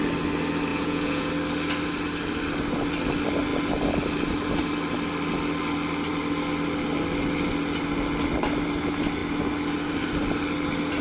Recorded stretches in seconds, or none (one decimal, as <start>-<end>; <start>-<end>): 0.0-0.7; 1.3-11.0